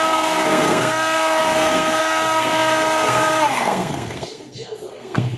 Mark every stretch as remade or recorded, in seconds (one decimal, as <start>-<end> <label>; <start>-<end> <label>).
0.0-5.4 remade